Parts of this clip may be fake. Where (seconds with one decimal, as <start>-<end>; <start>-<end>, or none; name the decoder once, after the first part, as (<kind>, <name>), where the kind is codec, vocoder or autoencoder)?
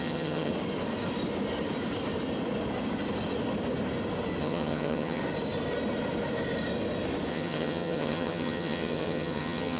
0.0-0.5 (vocoder, HiFi-GAN); 4.4-5.2; 7.3-9.8